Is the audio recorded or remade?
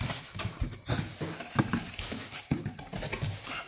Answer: recorded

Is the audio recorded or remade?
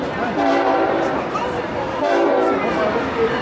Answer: remade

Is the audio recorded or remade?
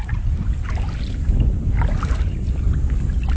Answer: recorded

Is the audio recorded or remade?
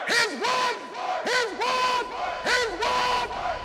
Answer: remade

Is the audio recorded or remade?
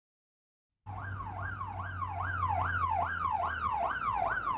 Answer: recorded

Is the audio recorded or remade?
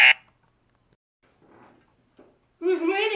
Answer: recorded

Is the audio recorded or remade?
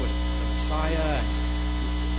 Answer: recorded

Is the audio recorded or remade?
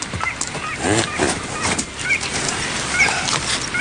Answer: recorded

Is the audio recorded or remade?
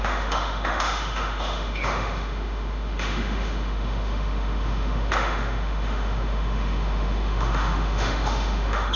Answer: remade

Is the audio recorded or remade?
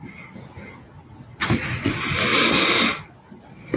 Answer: recorded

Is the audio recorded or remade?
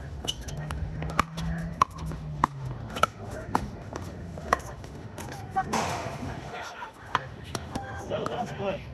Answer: remade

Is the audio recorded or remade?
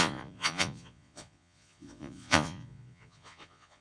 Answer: remade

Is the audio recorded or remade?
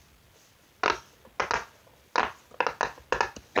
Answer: recorded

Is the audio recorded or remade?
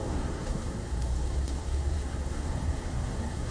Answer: remade